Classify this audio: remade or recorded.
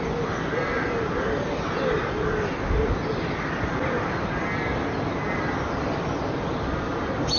recorded